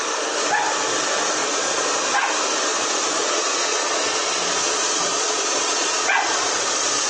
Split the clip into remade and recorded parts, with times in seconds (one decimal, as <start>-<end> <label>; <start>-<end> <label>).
0.0-1.4 recorded; 1.4-2.0 remade; 2.0-2.7 recorded; 2.7-7.1 remade